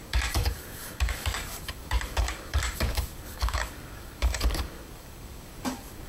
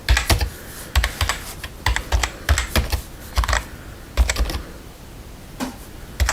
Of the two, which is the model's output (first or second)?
first